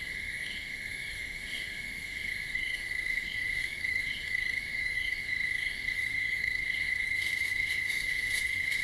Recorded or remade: remade